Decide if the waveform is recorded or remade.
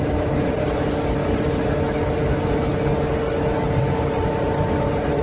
recorded